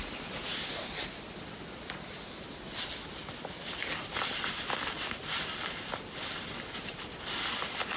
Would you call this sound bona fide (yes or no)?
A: yes